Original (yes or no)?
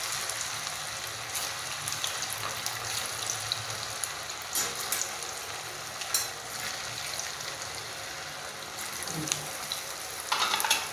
yes